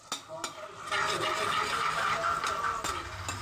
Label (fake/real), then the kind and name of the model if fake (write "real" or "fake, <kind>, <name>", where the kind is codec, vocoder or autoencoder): real